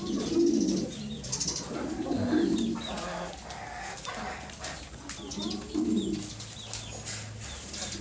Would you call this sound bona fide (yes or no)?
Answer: yes